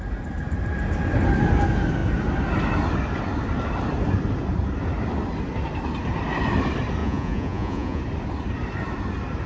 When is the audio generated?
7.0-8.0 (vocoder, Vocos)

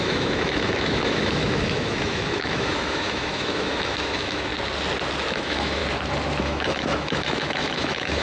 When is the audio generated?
0.0-4.5 (autoencoder, DAC-VAE); 5.3-5.8; 6.4-8.2

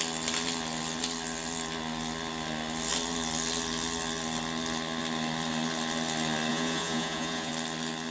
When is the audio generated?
6.5-7.5 (vocoder, Vocos)

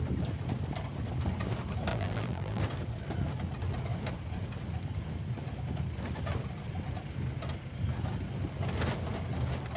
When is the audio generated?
1.9-2.6 (vocoder, BigVGAN v2)

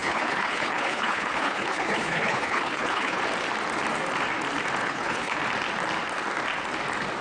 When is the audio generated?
0.0-3.2 (codec, HILCodec); 4.8-5.4